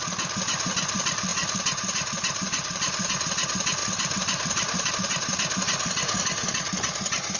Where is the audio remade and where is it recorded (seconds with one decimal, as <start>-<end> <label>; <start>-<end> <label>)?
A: 0.0-1.3 recorded; 1.3-3.1 remade; 3.1-3.8 recorded; 3.8-4.9 remade; 4.9-7.4 recorded